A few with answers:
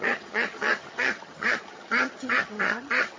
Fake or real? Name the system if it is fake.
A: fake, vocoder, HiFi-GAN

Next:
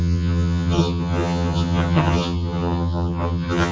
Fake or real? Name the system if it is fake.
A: fake, vocoder, HiFi-GAN